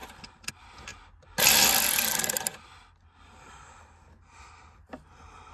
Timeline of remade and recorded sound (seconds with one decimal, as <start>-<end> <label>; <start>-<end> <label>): 0.0-5.5 recorded